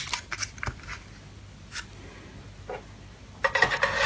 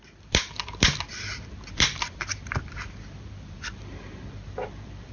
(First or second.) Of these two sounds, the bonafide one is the first